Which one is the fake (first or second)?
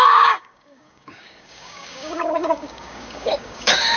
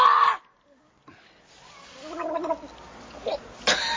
first